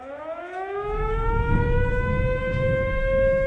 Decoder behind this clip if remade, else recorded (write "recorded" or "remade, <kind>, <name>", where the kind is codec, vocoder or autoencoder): remade, autoencoder, DAC-VAE